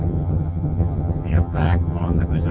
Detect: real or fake fake